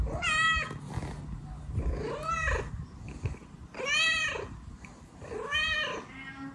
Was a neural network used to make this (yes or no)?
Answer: no